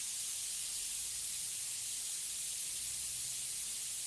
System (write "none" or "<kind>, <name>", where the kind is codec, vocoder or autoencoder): none